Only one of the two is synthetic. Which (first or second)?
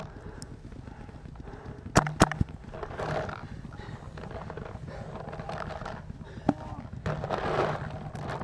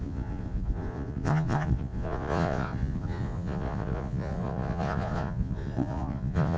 second